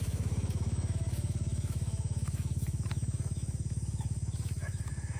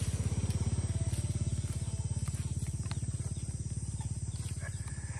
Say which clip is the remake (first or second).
first